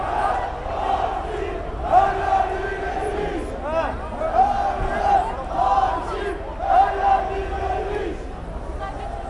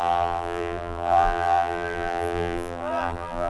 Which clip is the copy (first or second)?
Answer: second